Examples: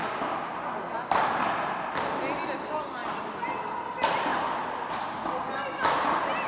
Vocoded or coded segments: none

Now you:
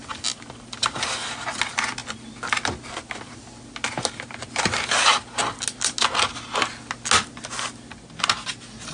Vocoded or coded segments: none